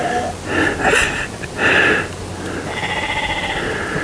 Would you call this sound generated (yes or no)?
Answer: no